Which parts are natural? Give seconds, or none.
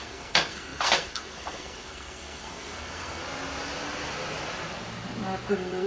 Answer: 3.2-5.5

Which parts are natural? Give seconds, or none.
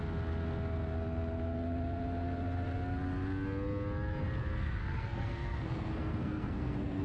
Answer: 0.0-4.5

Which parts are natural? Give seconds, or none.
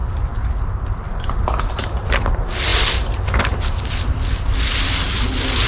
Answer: 0.0-5.7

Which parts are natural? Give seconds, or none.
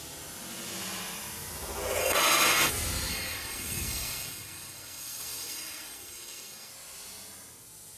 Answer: 0.0-2.0; 2.7-3.1; 6.7-8.0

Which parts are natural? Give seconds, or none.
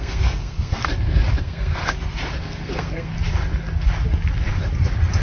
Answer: 0.8-1.4; 1.8-2.3; 3.1-5.2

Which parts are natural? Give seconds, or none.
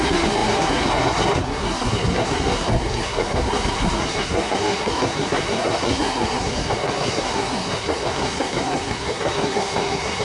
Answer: none